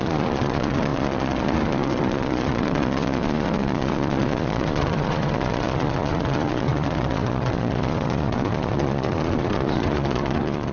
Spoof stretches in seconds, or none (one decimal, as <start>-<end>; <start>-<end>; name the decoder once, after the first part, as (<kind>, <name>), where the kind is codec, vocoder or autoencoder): 0.0-10.7 (vocoder, Vocos)